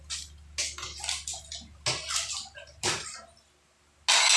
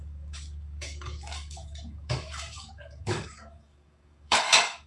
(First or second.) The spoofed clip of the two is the second